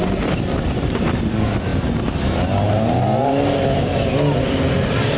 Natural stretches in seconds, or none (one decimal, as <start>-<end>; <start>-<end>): 0.0-5.2